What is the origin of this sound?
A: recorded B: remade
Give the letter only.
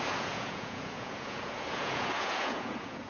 B